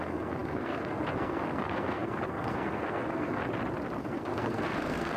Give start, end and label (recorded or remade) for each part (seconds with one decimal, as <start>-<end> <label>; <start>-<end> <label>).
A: 0.0-3.4 remade; 3.4-4.0 recorded; 4.0-5.2 remade

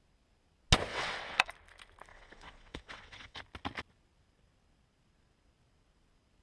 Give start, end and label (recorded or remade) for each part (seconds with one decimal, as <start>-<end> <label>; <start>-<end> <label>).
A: 0.0-0.9 recorded; 0.9-1.5 remade; 1.5-2.1 recorded; 2.1-3.4 remade; 3.4-6.4 recorded

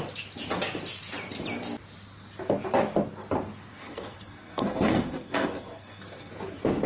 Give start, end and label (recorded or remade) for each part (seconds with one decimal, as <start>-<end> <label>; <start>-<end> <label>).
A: 0.0-3.7 recorded; 3.7-6.3 remade; 6.3-6.9 recorded